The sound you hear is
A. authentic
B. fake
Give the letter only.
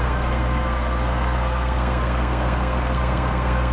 B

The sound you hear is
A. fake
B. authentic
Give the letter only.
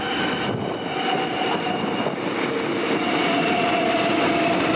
B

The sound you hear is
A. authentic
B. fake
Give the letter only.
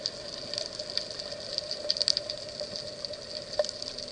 A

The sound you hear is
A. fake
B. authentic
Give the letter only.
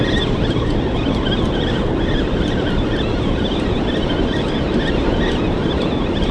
B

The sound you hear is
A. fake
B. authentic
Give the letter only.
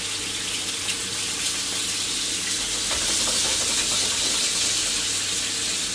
B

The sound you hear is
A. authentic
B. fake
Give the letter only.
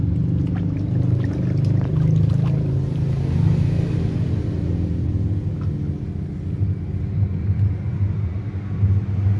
A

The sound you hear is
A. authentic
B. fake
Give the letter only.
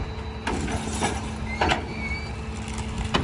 A